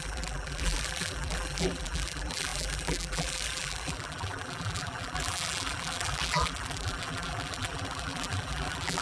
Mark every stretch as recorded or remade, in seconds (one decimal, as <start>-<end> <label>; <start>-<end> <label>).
0.0-9.0 remade

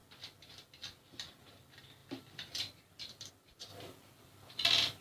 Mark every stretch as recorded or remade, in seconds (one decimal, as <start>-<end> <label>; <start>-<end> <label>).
0.0-2.0 recorded; 2.0-3.3 remade; 3.3-3.7 recorded; 3.7-5.0 remade

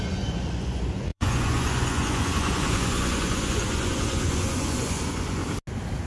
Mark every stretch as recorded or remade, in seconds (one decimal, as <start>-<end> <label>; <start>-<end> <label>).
0.0-5.4 remade; 5.4-6.1 recorded

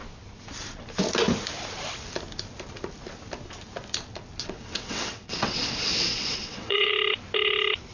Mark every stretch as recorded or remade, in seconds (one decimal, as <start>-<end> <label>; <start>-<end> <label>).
0.0-4.4 recorded; 4.4-6.9 remade; 6.9-7.9 recorded

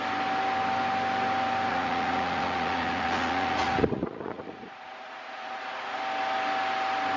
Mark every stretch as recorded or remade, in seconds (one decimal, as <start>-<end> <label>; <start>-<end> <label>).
0.0-1.7 recorded; 1.7-6.0 remade; 6.0-7.2 recorded